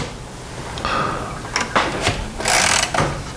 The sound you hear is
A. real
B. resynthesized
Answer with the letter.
A